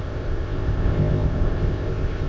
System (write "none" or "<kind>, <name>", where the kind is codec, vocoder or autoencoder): codec, ZipCodec